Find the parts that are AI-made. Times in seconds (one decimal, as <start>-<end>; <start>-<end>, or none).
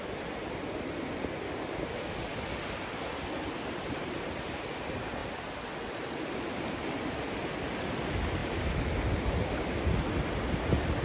none